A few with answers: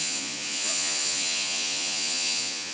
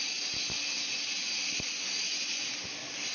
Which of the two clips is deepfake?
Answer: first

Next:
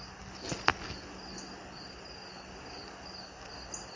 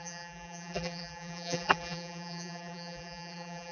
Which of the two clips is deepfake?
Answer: second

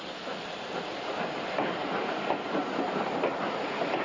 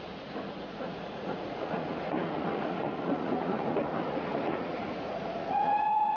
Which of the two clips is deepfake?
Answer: second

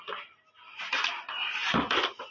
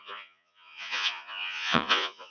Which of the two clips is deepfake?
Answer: second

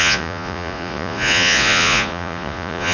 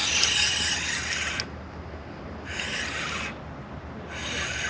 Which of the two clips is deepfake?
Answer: first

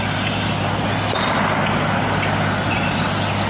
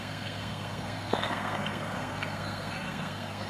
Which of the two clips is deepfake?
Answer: second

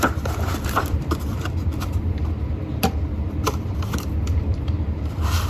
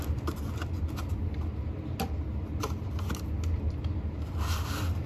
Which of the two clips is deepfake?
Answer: first